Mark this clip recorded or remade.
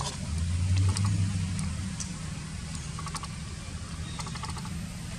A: recorded